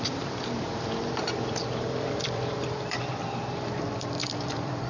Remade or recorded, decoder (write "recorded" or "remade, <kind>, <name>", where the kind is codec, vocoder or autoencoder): remade, vocoder, BigVGAN v2